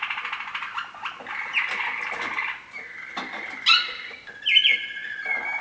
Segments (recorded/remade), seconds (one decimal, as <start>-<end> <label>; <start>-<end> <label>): 0.0-5.6 recorded